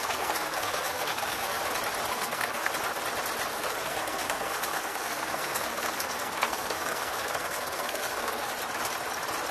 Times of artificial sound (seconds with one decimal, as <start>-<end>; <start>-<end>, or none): 0.0-1.6; 2.1-2.7; 3.5-8.5